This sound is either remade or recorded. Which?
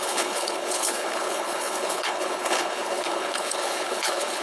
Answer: remade